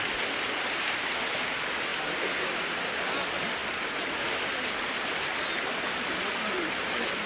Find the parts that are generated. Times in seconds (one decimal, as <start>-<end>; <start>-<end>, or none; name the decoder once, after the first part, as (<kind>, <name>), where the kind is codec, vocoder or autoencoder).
none